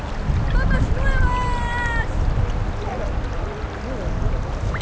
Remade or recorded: recorded